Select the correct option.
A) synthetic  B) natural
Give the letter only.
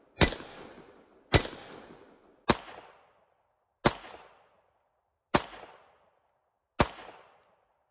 B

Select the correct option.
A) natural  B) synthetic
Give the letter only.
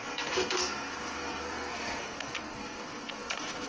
B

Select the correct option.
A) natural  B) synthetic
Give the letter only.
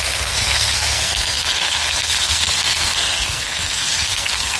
B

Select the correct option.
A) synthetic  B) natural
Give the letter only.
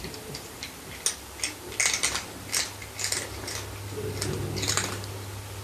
B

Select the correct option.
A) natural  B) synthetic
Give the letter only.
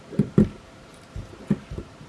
A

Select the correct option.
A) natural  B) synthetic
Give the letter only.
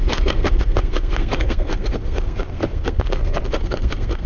B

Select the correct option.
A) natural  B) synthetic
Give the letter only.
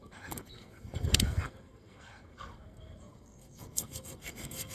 B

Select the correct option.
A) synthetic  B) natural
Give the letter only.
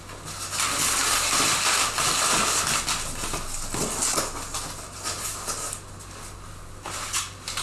B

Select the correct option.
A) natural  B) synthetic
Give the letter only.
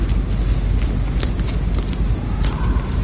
A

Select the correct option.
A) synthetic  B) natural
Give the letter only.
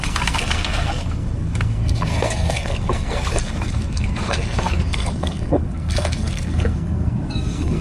A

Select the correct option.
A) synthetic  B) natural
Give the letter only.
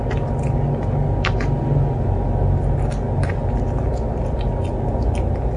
B